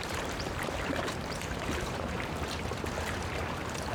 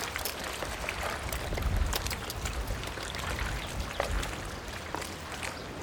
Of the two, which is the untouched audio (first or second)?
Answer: second